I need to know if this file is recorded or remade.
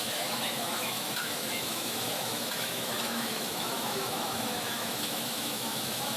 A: remade